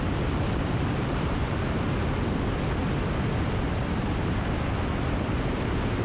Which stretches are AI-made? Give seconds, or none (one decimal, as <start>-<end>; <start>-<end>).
none